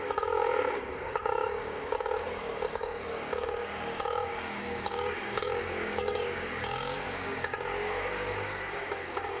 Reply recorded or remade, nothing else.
remade